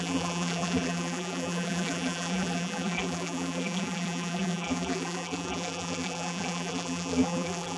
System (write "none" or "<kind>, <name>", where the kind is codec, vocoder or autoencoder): vocoder, BigVGAN v2